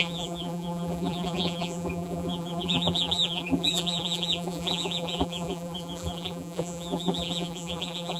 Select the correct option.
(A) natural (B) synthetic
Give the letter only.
B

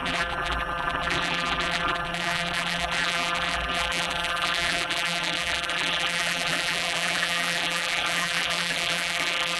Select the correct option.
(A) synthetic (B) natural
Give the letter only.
A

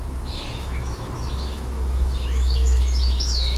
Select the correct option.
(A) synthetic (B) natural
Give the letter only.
A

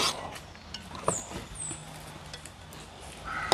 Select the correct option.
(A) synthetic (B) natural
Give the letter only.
B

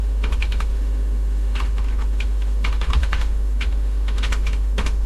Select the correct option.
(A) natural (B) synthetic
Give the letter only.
B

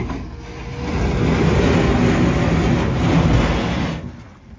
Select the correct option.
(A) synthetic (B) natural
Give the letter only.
B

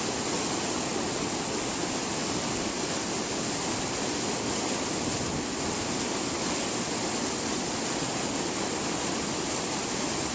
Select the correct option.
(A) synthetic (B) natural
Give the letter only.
B